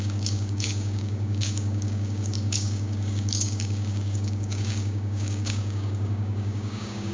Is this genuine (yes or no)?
no